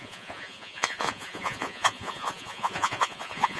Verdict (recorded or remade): remade